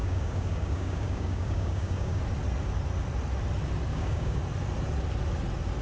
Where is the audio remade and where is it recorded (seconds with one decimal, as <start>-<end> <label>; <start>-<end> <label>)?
0.0-2.2 remade; 2.2-3.9 recorded; 3.9-4.4 remade; 4.4-5.8 recorded